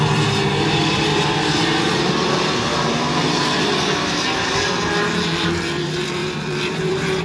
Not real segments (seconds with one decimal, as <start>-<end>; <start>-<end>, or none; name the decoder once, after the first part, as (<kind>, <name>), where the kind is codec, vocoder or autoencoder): 0.0-7.2 (vocoder, BigVGAN v2)